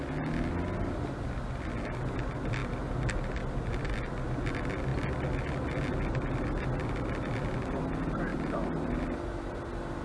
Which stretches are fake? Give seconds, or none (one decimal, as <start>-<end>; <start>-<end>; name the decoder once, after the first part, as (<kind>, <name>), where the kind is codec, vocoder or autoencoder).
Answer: none